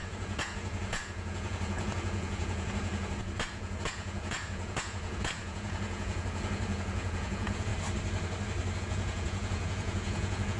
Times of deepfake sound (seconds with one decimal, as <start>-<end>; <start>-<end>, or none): 0.0-7.7; 8.8-10.6